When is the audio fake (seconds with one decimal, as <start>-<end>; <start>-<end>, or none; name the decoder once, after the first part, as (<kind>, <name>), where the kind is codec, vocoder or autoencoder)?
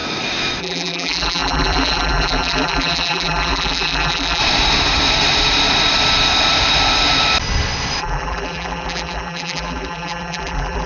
0.6-4.4 (vocoder, BigVGAN v2); 8.0-10.9